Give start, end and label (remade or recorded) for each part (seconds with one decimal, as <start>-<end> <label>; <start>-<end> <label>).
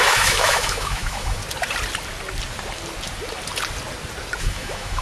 0.0-1.4 remade; 1.4-4.4 recorded; 4.4-5.0 remade